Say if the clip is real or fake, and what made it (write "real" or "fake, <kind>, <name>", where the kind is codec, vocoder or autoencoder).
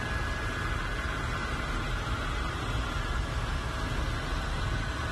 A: real